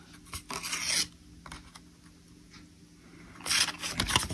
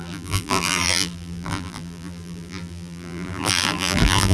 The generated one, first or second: second